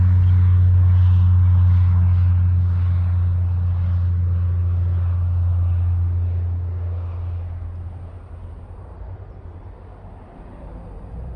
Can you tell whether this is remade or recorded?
recorded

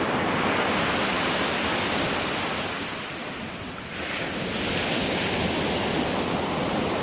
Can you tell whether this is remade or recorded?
recorded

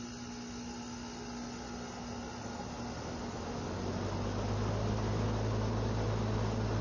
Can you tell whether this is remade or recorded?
recorded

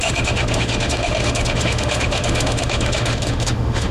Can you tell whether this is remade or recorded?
remade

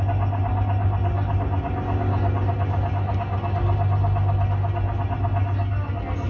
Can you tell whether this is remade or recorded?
recorded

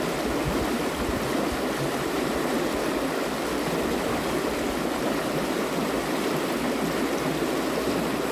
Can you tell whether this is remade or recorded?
recorded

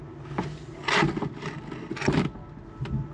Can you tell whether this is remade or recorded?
recorded